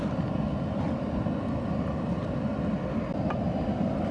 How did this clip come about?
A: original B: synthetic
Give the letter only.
A